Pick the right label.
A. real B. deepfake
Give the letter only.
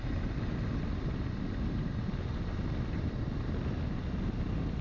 A